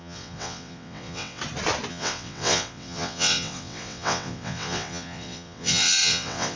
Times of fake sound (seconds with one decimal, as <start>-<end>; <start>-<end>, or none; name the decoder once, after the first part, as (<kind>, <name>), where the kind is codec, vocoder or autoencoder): 0.0-1.4 (vocoder, WaveNeXt); 1.9-6.6